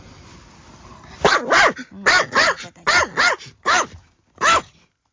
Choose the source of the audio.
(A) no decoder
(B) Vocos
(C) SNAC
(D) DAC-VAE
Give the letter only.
A